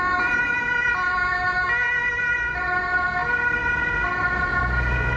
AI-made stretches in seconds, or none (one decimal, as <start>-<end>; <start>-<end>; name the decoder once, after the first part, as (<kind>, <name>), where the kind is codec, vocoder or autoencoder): none